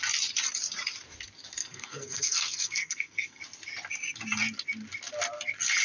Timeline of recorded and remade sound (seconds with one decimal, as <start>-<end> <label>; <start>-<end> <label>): 0.0-1.6 recorded; 1.6-3.4 remade; 3.4-5.8 recorded